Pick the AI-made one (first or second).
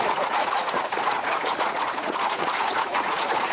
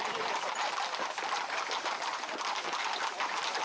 first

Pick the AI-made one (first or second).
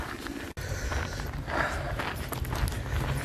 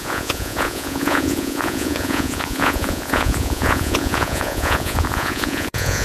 second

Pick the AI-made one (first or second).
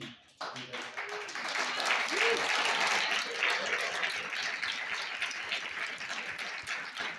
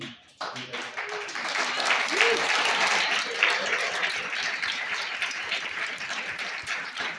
second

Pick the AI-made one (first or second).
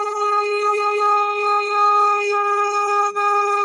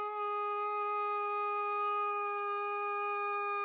first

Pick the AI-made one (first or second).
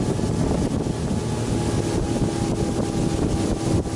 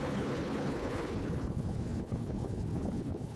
second